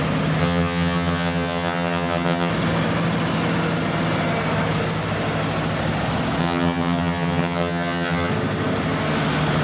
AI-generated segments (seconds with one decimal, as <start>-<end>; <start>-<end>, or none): 0.4-2.5; 6.4-8.3